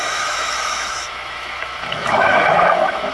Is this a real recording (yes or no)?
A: no